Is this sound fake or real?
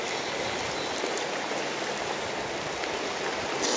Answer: real